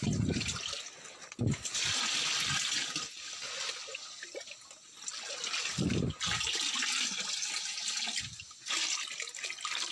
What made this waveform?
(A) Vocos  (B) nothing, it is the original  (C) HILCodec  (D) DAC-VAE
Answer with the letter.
B